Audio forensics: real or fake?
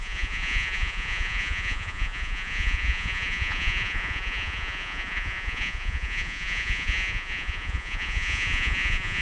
fake